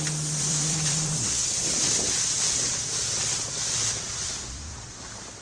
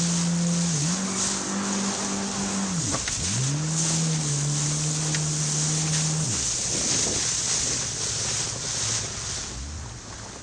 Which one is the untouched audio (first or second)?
second